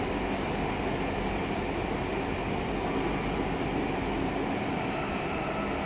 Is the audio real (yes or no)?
yes